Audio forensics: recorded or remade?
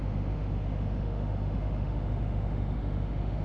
remade